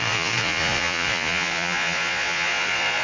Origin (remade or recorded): remade